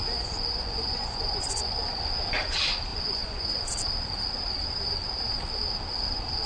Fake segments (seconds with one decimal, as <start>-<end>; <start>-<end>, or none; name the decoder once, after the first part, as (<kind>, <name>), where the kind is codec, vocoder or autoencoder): 0.0-1.8 (vocoder, Vocos); 2.9-3.7